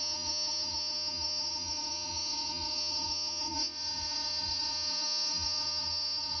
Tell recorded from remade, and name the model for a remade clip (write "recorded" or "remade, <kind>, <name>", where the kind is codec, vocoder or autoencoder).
remade, vocoder, Vocos